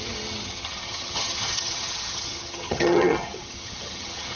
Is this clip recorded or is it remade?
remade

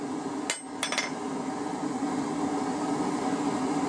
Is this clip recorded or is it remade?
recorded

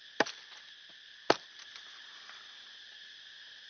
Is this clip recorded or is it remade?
recorded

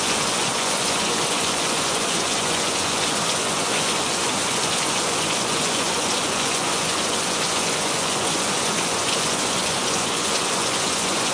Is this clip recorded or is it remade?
remade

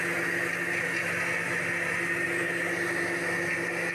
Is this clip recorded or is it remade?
recorded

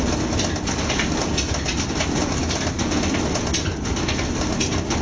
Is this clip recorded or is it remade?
recorded